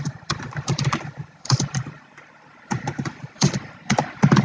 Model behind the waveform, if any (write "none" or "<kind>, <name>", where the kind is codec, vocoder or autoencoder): vocoder, BigVGAN v2